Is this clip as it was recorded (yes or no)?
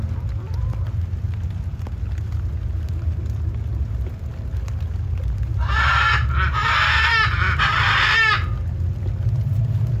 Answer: yes